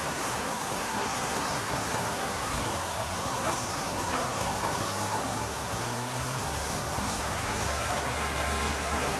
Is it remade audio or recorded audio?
remade